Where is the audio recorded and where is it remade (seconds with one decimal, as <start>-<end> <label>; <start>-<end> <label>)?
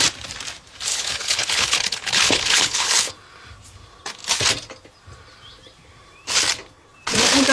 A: 0.0-0.9 recorded; 0.9-3.1 remade; 3.1-7.5 recorded